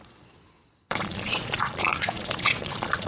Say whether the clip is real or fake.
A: fake